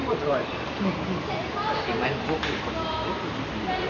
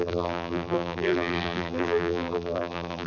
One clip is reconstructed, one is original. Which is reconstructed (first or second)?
second